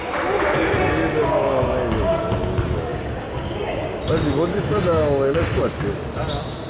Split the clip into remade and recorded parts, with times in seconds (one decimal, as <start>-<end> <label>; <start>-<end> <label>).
0.0-1.2 recorded; 1.2-2.2 remade; 2.2-2.9 recorded; 2.9-4.0 remade; 4.0-4.5 recorded; 4.5-5.6 remade; 5.6-6.7 recorded